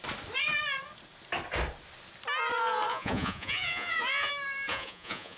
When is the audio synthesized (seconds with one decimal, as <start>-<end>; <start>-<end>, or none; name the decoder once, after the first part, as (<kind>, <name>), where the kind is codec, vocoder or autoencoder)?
2.9-4.3 (vocoder, Vocos); 4.7-5.4